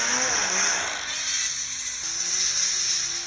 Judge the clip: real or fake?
real